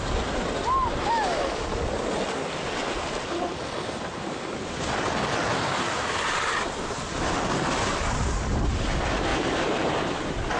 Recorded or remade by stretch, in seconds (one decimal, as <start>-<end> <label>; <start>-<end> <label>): 0.0-10.6 recorded